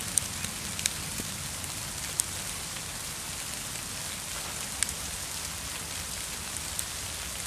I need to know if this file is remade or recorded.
recorded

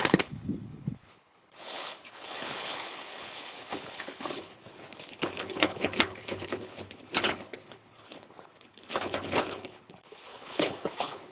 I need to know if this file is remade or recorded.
remade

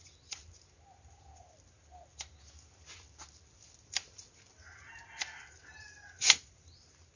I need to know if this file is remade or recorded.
recorded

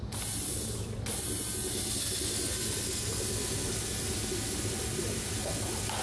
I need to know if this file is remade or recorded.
recorded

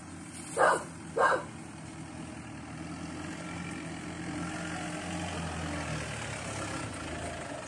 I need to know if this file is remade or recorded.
recorded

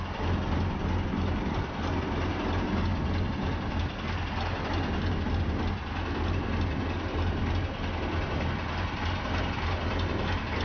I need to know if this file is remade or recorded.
recorded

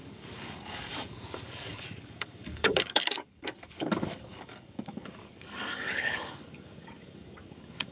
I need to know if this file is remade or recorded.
remade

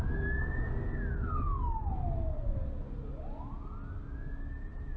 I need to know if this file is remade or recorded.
recorded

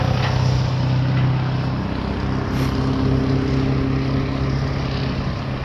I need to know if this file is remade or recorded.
recorded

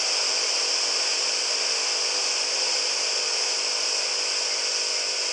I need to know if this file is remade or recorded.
recorded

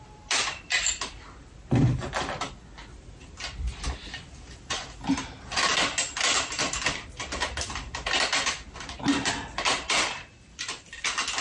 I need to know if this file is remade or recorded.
recorded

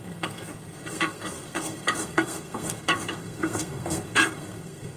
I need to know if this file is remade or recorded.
remade